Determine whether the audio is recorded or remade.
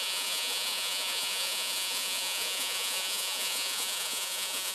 remade